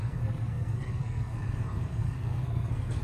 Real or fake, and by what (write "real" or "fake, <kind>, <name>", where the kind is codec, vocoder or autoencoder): fake, codec, SNAC